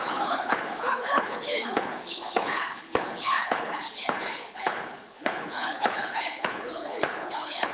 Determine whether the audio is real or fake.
fake